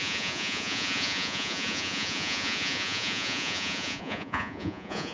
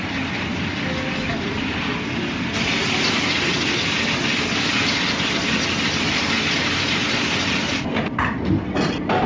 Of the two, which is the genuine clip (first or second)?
second